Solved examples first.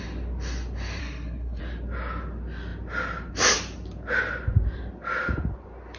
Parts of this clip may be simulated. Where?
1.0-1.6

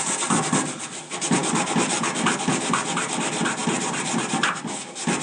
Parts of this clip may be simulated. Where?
none

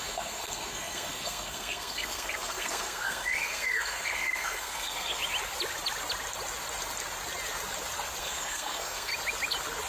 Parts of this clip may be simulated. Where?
0.0-5.2; 8.2-9.1

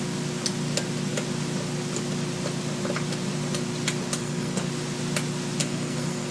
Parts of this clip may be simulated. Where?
4.2-4.7; 5.6-6.3

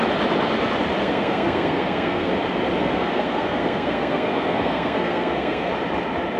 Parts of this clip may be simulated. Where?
1.0-2.3; 2.8-5.7

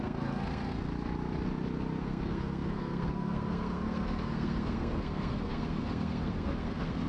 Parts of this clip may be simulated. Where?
0.0-0.9; 2.0-7.1